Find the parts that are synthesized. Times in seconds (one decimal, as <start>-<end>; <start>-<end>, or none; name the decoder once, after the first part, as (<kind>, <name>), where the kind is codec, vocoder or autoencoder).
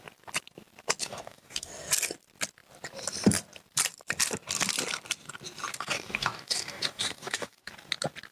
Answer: 1.0-1.7 (codec, DAC); 5.7-7.7